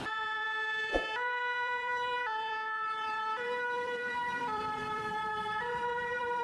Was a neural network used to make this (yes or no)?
yes